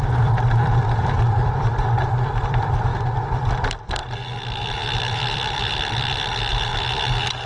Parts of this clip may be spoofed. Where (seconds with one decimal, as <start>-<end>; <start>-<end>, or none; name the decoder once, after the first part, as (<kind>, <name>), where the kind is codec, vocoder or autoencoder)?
0.0-2.9 (vocoder, BigVGAN v2); 3.5-4.0; 5.0-6.7